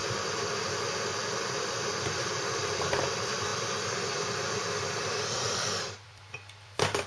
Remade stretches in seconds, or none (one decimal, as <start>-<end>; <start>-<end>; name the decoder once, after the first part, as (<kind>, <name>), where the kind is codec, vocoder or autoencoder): 1.4-3.5 (vocoder, BigVGAN v2); 5.0-7.1